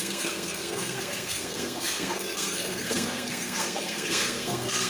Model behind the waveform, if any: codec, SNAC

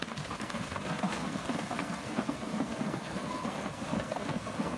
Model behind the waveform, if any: codec, SNAC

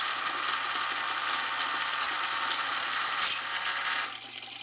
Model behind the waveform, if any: none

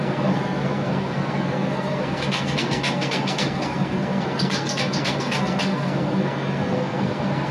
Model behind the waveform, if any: codec, SNAC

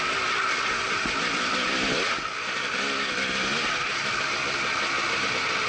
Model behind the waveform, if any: none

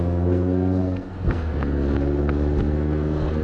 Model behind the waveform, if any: codec, SNAC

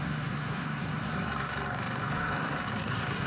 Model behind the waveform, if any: codec, SNAC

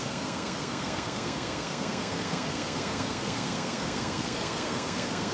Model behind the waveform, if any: codec, SNAC